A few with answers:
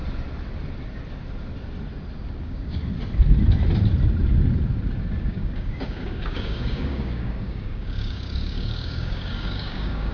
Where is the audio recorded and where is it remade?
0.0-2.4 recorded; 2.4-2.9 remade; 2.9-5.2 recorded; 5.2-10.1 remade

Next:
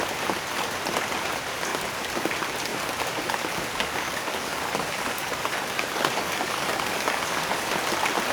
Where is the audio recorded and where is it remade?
0.0-1.7 recorded; 1.7-2.3 remade; 2.3-2.7 recorded; 2.7-7.7 remade; 7.7-8.3 recorded

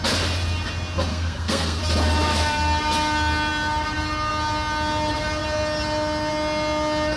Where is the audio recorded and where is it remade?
0.0-1.1 recorded; 1.1-1.8 remade; 1.8-7.2 recorded

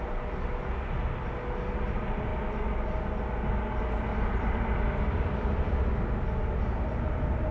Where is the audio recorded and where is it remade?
0.0-4.1 recorded; 4.1-5.9 remade; 5.9-7.5 recorded

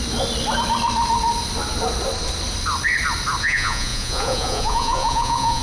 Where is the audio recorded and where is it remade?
0.0-3.4 recorded; 3.4-5.6 remade

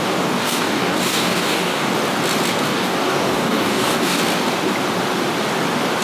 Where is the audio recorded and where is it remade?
0.0-0.4 recorded; 0.4-1.9 remade; 1.9-2.7 recorded; 2.7-4.2 remade; 4.2-6.0 recorded

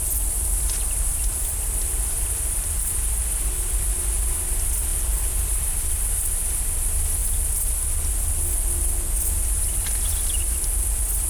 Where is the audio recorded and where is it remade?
0.0-1.1 recorded; 1.1-2.8 remade; 2.8-11.3 recorded